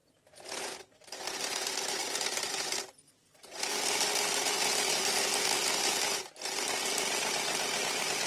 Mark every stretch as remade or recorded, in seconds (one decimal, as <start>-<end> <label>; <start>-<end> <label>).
0.0-8.3 recorded